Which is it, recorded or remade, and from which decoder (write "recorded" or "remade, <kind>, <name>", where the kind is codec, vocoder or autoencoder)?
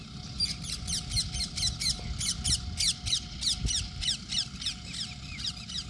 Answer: recorded